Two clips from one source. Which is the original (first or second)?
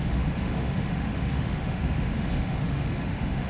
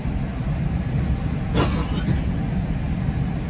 second